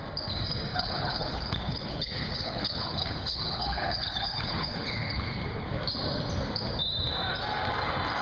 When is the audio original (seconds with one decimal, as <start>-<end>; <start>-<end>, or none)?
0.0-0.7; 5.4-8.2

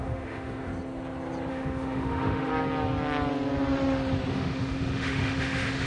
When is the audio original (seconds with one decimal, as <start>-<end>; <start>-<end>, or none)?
0.7-1.5; 2.5-4.3

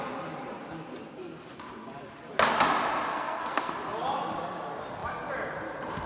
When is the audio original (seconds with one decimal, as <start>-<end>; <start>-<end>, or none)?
0.0-3.1; 3.7-6.1